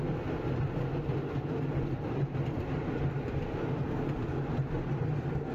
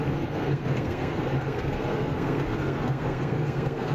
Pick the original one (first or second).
first